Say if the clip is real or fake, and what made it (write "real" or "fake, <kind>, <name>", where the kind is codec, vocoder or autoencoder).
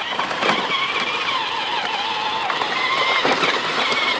fake, vocoder, BigVGAN v2